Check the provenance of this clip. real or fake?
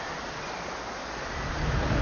real